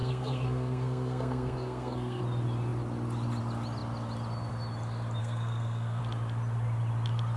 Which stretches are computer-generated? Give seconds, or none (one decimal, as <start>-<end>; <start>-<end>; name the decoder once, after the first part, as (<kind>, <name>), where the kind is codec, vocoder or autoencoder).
0.0-2.2 (codec, SNAC); 5.2-6.0